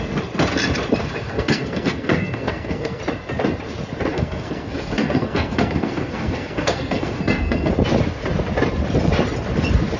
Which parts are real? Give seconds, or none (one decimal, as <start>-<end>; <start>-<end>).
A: 0.0-1.0; 3.0-4.1; 7.7-10.0